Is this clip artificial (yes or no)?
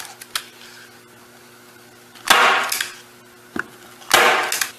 no